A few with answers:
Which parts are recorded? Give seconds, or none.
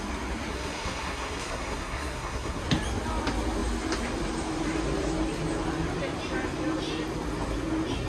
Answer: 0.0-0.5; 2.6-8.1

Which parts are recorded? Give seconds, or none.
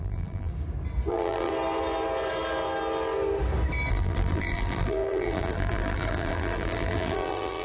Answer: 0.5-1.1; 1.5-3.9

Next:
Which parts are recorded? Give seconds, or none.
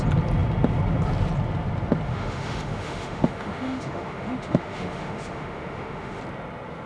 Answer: 0.0-2.1; 6.2-6.9